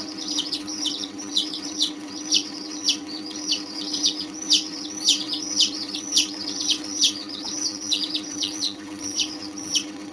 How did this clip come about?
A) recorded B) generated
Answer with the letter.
B